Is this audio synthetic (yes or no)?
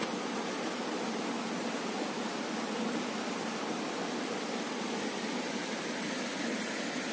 no